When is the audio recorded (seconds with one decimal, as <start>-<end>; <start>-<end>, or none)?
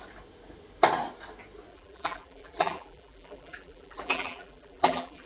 0.0-1.7